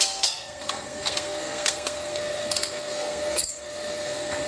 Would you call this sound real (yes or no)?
no